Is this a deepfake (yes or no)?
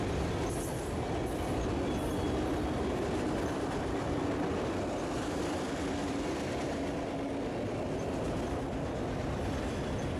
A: no